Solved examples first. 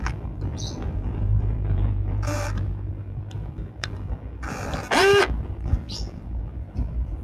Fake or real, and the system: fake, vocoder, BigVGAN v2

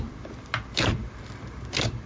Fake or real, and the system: fake, vocoder, BigVGAN v2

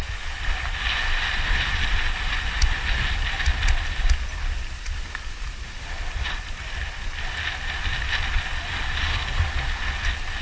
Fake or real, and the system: real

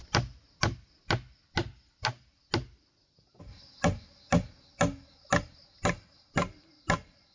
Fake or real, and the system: real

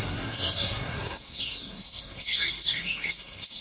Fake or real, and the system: fake, codec, SNAC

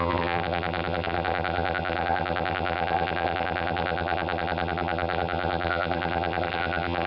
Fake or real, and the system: fake, vocoder, BigVGAN v2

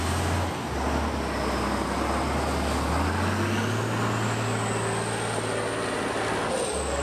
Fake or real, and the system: real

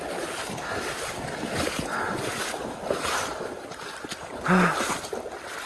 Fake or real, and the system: real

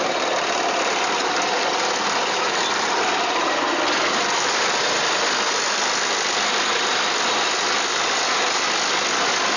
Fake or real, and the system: real